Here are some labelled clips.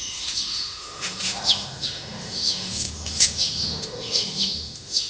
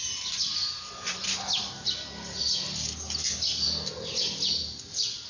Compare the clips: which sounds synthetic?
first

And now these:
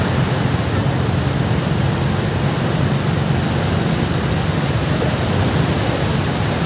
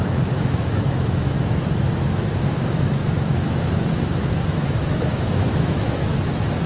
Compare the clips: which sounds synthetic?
second